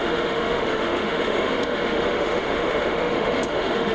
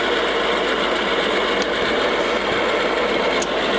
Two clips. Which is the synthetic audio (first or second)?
first